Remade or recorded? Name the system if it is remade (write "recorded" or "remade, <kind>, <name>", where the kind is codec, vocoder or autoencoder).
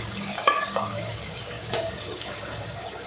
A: remade, codec, DAC